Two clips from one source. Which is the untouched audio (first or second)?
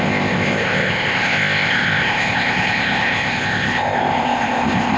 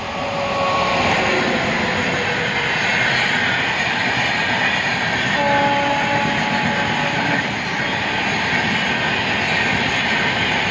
second